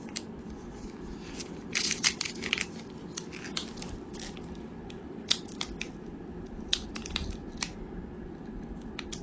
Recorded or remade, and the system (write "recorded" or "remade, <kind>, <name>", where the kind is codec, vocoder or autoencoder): recorded